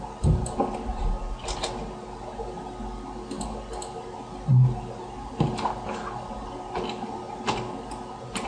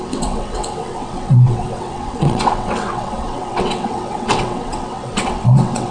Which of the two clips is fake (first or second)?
second